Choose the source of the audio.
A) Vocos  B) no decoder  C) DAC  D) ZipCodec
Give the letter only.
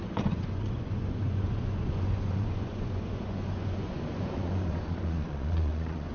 A